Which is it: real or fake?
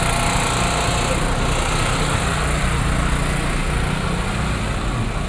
real